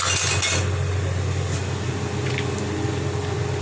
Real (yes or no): yes